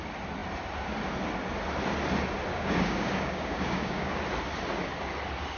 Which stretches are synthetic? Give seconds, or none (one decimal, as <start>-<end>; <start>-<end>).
2.5-4.2